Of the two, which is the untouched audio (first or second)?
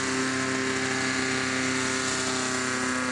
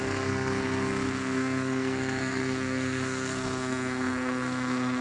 first